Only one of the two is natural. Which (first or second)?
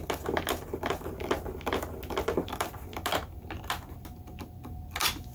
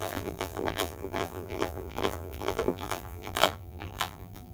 first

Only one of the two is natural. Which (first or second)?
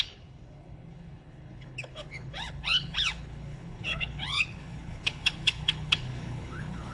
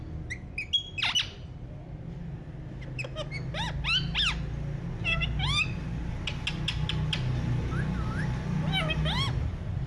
second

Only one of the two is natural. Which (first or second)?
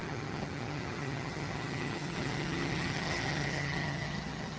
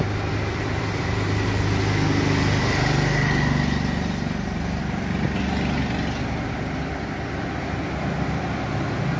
second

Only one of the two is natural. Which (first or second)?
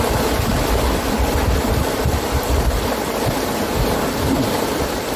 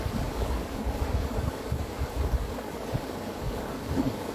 first